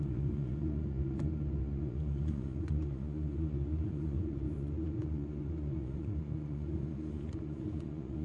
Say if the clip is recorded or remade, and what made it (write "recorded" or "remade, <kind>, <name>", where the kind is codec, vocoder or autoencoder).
remade, vocoder, Vocos